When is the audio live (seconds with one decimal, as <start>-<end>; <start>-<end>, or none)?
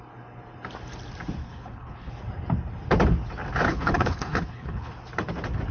0.0-1.4; 2.1-3.7; 4.9-5.7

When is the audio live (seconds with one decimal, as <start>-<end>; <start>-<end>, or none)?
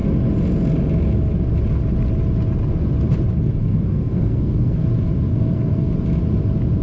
0.0-3.6; 4.8-5.3; 5.9-6.8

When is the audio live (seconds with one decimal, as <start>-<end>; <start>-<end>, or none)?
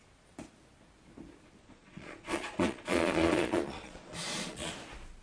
0.0-1.6; 4.7-5.2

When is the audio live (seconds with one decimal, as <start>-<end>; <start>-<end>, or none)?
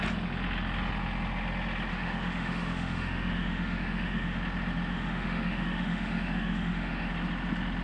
0.0-1.9; 4.4-4.9; 7.1-7.8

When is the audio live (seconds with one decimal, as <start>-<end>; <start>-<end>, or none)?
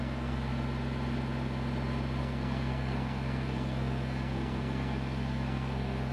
0.5-2.2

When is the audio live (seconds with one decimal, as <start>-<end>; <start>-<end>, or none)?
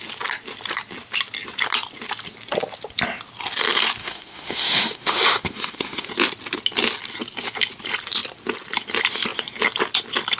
0.0-4.0; 6.1-10.4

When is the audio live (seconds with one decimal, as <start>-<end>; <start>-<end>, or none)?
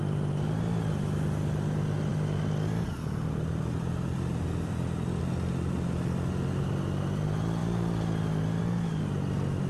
0.0-9.7